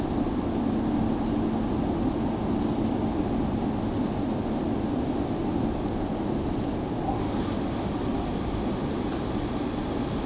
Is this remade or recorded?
recorded